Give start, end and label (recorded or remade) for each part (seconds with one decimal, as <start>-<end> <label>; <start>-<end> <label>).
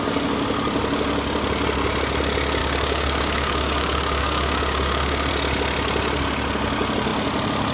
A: 0.0-2.6 recorded; 2.6-5.3 remade; 5.3-7.7 recorded